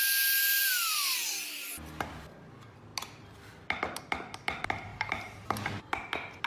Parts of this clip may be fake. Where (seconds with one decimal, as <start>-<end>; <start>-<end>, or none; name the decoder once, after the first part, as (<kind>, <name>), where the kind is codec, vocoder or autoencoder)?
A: 4.9-5.8 (vocoder, BigVGAN v2)